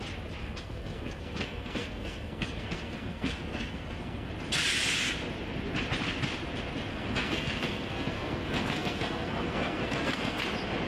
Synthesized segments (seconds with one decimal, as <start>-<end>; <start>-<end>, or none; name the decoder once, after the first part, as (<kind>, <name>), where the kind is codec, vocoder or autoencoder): 0.4-4.3 (codec, SNAC); 6.9-10.4